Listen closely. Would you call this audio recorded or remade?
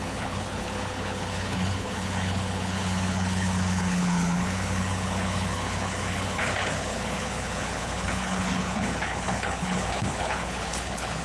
remade